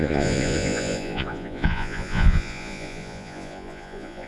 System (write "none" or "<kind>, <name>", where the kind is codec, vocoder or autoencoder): vocoder, Vocos